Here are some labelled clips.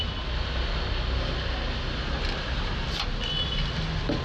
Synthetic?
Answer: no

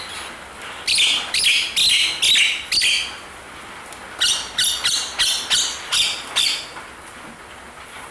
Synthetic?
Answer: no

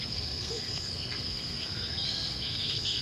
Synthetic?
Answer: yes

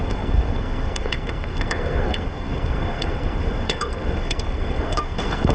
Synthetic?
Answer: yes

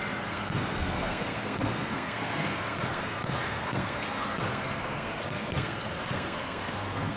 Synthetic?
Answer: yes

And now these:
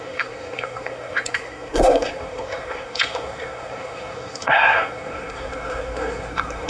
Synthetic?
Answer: yes